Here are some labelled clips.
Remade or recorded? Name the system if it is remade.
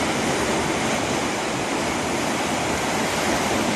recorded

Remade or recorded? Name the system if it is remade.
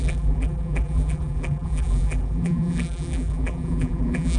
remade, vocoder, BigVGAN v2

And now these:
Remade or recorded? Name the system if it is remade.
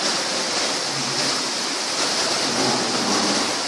recorded